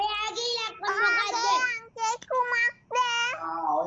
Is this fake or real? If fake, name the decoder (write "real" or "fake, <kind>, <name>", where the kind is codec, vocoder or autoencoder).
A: real